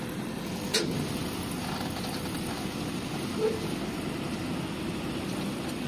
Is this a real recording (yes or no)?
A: yes